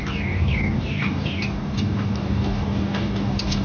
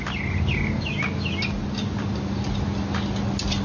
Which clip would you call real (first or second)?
second